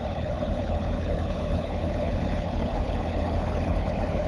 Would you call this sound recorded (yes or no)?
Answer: no